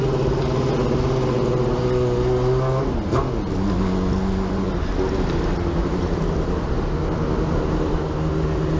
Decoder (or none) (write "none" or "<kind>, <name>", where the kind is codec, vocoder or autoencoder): none